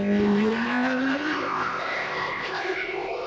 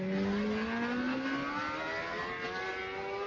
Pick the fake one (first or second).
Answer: first